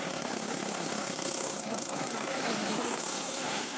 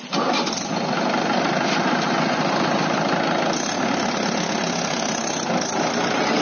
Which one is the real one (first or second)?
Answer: second